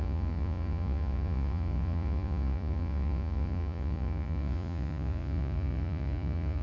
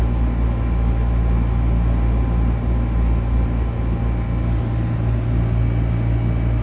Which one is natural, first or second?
second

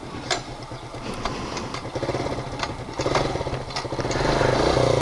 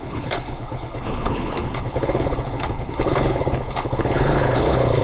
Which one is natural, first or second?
first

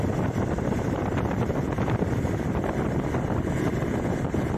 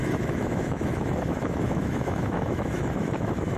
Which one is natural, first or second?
first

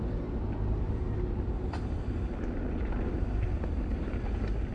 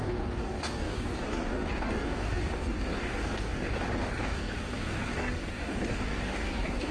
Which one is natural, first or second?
first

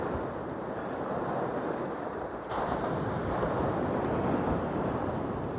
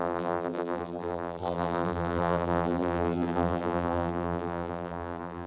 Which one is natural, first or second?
first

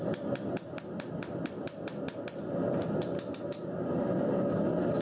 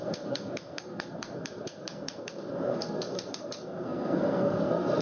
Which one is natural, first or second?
first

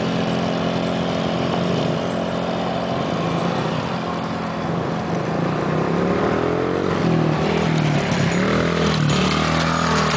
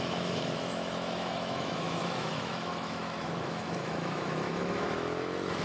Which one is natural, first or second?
first